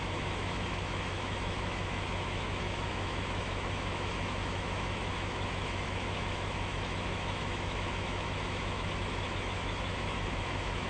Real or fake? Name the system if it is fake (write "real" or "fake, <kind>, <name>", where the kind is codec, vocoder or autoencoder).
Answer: fake, autoencoder, DAC-VAE